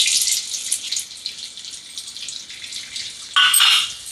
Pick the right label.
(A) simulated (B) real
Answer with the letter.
B